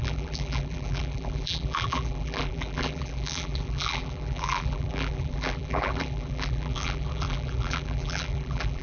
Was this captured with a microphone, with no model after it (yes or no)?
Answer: no